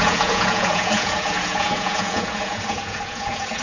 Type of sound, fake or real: fake